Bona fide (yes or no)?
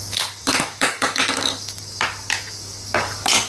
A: no